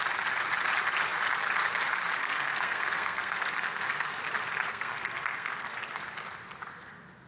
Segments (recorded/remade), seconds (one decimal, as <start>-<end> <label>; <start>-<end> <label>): 0.0-2.2 recorded; 2.2-4.2 remade; 4.2-4.7 recorded; 4.7-6.0 remade; 6.0-7.3 recorded